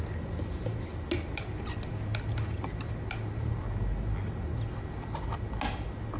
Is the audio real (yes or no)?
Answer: yes